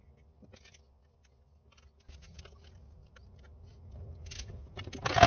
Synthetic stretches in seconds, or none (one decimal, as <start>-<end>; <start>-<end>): none